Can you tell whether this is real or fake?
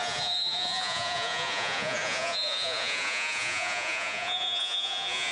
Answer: fake